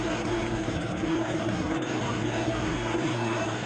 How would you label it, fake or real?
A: fake